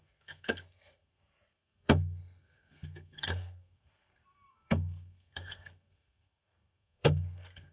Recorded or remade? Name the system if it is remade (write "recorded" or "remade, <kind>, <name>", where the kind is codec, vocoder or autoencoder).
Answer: remade, codec, SNAC